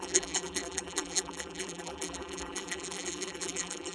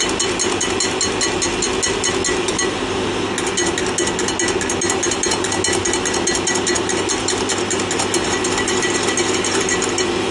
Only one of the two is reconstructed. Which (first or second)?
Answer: first